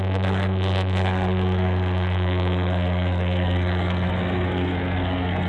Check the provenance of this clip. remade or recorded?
remade